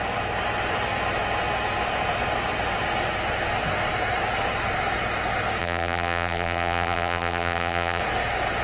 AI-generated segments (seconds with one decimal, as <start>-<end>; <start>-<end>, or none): 5.6-8.0